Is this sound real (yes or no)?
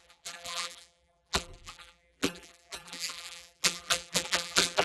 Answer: no